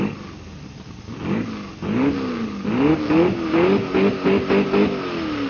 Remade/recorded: recorded